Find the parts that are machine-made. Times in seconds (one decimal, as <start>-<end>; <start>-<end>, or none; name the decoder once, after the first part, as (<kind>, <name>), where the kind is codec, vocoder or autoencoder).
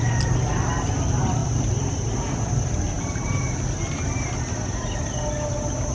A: none